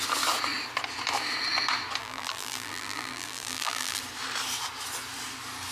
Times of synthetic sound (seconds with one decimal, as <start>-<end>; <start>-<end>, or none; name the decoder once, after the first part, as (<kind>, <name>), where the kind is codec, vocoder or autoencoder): 2.0-4.0 (vocoder, BigVGAN v2)